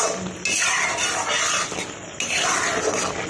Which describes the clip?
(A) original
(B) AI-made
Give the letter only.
A